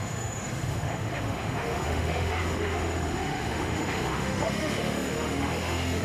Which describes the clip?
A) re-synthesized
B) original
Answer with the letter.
A